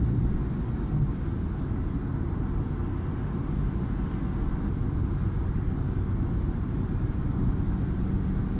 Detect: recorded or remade recorded